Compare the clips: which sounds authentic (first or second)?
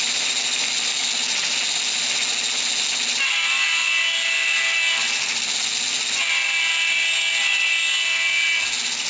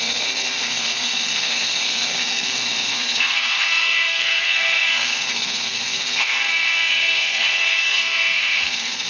first